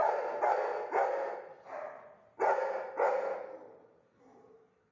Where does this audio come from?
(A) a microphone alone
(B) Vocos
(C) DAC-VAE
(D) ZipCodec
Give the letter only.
A